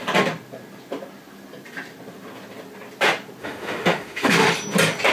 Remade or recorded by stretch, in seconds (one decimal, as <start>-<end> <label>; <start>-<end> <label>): 0.0-3.4 recorded; 3.4-4.5 remade; 4.5-5.1 recorded